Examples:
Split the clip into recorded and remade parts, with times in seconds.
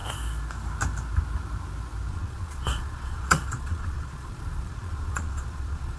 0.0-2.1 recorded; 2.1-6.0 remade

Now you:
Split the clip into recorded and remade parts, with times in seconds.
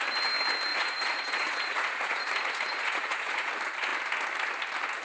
0.0-0.7 recorded; 0.7-3.5 remade; 3.5-5.0 recorded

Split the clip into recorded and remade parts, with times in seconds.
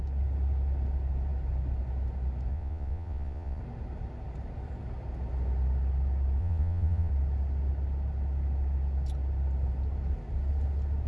0.0-2.5 recorded; 2.5-3.6 remade; 3.6-6.4 recorded; 6.4-7.1 remade; 7.1-11.1 recorded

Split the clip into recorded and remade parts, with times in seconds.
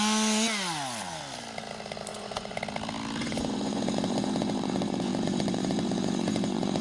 0.0-2.1 recorded; 2.1-2.6 remade; 2.6-3.2 recorded; 3.2-6.8 remade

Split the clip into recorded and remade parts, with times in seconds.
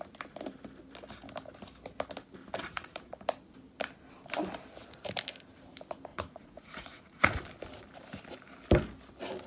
0.0-2.6 recorded; 2.6-3.1 remade; 3.1-6.1 recorded; 6.1-7.2 remade; 7.2-9.5 recorded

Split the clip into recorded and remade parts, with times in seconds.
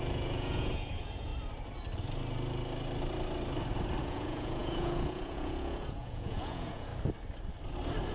0.0-1.3 remade; 1.3-4.0 recorded; 4.0-6.9 remade; 6.9-8.1 recorded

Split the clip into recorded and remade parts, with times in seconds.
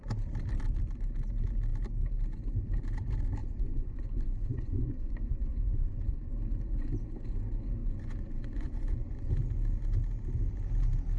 0.0-3.4 recorded; 3.4-6.3 remade; 6.3-7.8 recorded; 7.8-9.3 remade; 9.3-11.2 recorded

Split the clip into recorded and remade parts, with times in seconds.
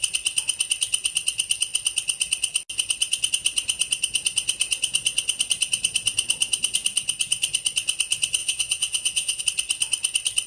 0.0-8.4 recorded; 8.4-9.4 remade; 9.4-10.5 recorded